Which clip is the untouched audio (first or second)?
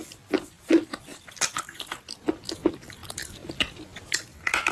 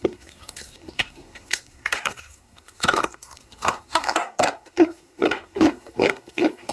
first